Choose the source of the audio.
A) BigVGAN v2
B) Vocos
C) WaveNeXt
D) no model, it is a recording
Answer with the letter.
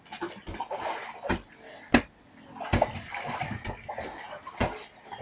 D